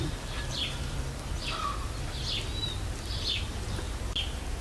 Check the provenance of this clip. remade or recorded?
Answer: recorded